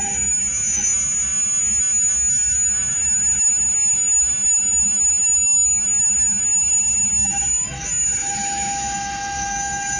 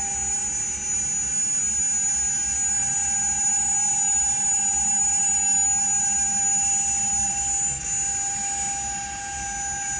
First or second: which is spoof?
first